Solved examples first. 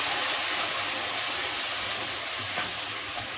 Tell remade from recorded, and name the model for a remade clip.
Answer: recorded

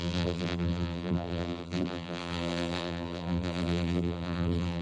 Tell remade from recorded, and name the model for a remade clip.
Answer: remade, vocoder, BigVGAN v2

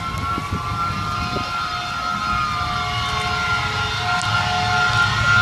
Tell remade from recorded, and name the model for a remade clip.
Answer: recorded